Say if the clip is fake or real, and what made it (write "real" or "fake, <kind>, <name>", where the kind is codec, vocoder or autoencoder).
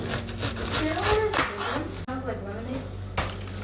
real